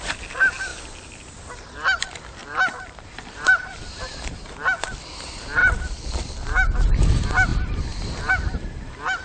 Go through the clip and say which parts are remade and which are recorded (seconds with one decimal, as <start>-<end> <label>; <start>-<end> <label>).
0.0-2.4 recorded; 2.4-3.8 remade; 3.8-5.6 recorded; 5.6-6.3 remade; 6.3-9.2 recorded